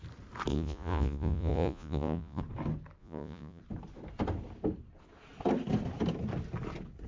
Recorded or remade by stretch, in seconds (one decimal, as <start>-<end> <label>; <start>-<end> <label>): 0.0-0.5 recorded; 0.5-2.4 remade; 2.4-3.0 recorded; 3.0-3.6 remade; 3.6-7.1 recorded